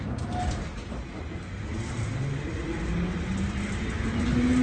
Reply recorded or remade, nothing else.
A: recorded